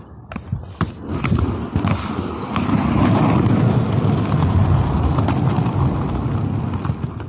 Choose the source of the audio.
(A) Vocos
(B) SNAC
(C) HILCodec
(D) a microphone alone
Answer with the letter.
D